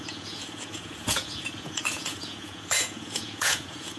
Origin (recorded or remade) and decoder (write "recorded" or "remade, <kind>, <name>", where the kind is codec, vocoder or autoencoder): remade, vocoder, Vocos